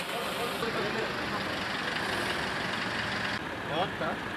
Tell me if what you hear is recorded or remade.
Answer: recorded